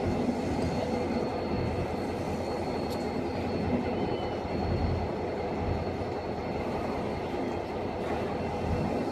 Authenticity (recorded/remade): recorded